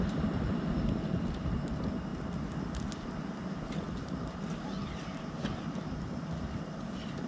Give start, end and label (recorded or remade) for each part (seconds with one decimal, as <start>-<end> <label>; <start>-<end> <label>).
0.0-2.1 recorded; 2.1-4.1 remade; 4.1-7.3 recorded